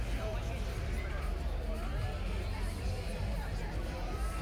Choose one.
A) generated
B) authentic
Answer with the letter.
B